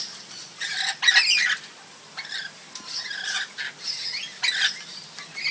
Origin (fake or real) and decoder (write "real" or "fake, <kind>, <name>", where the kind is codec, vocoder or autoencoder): real